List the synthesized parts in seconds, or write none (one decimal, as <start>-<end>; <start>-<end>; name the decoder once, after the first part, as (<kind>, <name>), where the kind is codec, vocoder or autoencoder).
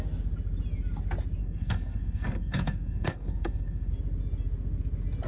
1.4-3.9 (codec, SNAC)